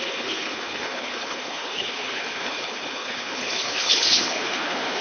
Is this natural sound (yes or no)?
no